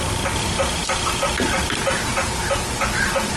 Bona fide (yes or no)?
yes